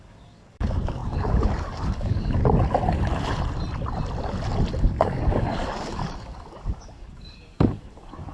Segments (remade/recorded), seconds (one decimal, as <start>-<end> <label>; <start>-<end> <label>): 0.0-2.4 remade; 2.4-4.8 recorded; 4.8-8.3 remade